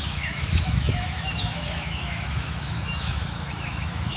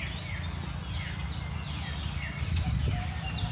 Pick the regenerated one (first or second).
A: first